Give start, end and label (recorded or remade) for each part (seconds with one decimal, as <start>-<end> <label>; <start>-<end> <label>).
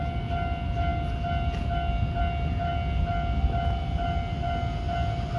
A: 0.0-5.4 recorded